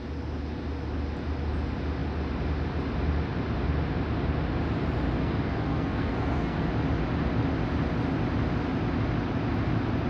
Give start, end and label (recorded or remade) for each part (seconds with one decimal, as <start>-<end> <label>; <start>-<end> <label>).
0.0-5.2 recorded; 5.2-6.7 remade; 6.7-10.1 recorded